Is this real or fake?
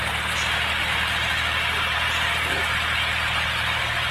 real